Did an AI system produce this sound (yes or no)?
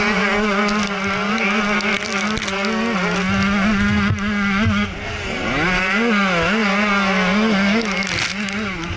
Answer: no